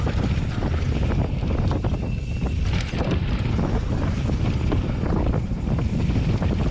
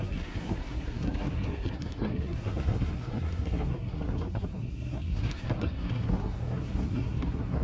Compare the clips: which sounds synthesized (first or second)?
second